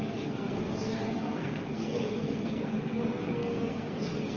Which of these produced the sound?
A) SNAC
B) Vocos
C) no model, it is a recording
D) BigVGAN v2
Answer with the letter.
A